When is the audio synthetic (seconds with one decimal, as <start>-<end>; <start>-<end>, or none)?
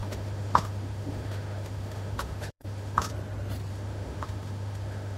0.0-3.1; 3.7-5.2